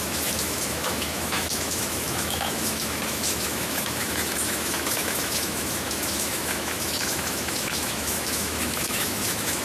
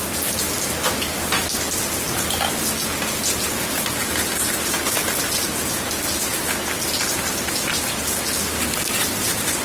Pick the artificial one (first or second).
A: first